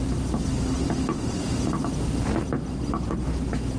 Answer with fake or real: real